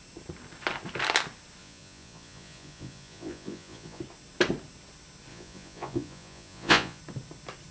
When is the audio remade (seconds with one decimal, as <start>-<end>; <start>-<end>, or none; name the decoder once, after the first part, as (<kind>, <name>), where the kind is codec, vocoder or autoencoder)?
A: 1.6-4.0 (vocoder, Vocos); 5.3-7.0